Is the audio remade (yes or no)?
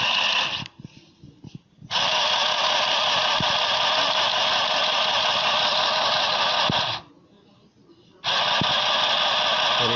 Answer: no